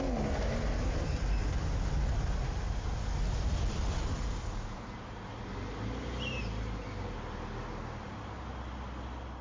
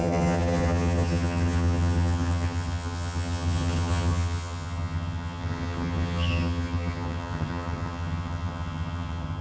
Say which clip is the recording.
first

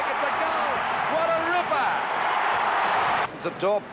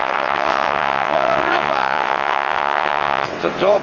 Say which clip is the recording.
first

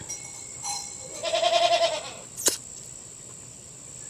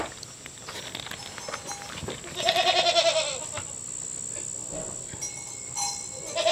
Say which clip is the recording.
second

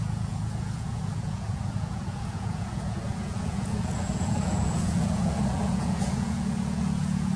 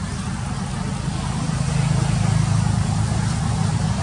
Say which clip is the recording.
second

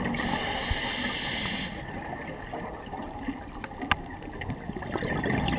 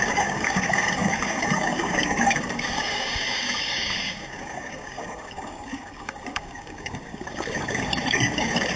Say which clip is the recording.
first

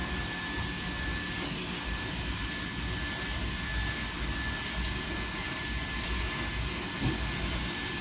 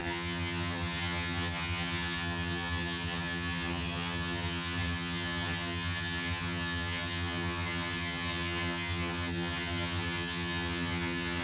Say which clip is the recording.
first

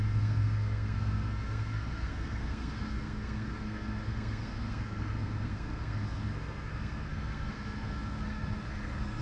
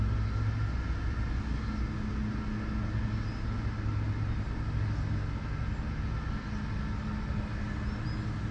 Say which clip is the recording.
second